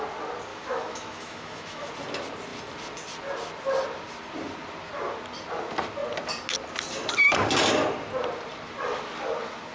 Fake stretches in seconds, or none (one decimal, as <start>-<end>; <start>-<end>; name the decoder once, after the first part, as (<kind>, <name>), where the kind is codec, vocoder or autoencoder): 0.5-1.9 (autoencoder, DAC-VAE)